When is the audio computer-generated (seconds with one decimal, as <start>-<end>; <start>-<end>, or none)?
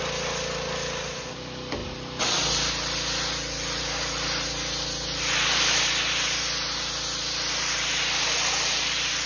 none